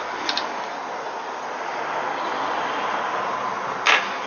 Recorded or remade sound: recorded